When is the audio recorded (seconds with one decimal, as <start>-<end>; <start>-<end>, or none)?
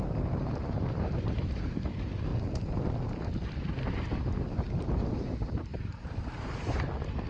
2.3-3.7